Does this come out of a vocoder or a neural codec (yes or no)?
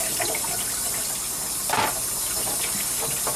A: no